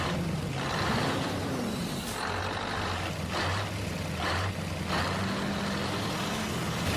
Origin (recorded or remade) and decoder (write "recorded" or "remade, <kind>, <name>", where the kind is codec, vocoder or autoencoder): recorded